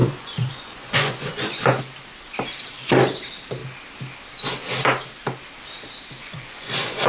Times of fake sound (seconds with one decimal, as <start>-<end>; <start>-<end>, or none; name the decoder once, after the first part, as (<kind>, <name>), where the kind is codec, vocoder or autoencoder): 0.0-1.8 (vocoder, Vocos); 6.2-7.1